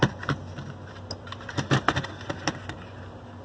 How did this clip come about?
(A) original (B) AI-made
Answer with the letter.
A